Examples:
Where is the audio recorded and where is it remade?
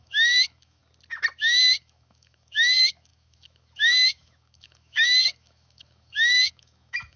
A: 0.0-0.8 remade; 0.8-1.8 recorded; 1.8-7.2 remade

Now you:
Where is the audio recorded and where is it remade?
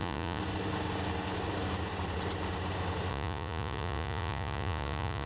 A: 0.0-0.4 remade; 0.4-3.1 recorded; 3.1-5.3 remade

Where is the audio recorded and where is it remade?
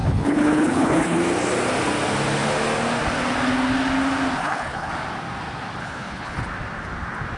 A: 0.0-1.2 remade; 1.2-4.4 recorded; 4.4-4.9 remade; 4.9-5.8 recorded; 5.8-6.4 remade; 6.4-7.4 recorded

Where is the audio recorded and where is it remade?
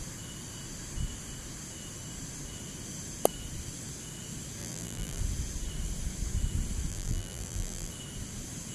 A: 0.0-4.6 recorded; 4.6-5.2 remade; 5.2-6.9 recorded; 6.9-7.9 remade; 7.9-8.7 recorded